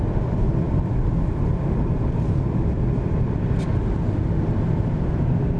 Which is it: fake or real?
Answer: fake